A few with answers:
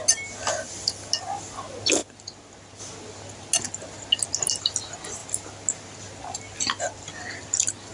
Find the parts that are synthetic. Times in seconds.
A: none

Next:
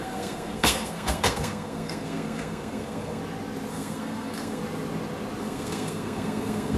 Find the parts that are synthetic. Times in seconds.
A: 0.0-3.2 (codec, SNAC); 3.7-4.6; 5.4-6.8

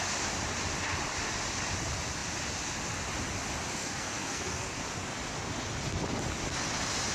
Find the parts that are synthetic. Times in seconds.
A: 3.8-4.8 (codec, SNAC)

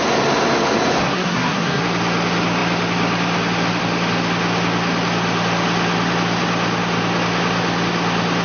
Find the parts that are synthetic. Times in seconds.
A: 1.0-1.8 (codec, SNAC)

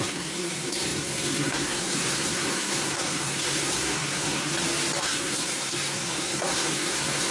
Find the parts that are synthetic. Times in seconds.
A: 0.0-4.5 (codec, SNAC); 5.0-7.3

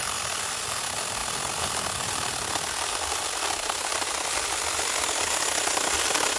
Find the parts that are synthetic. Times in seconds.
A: none

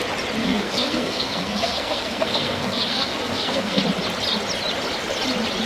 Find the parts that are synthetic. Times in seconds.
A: 0.4-3.8 (codec, SNAC)

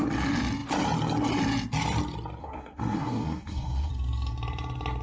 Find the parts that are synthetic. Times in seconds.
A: 2.4-3.9 (codec, SNAC)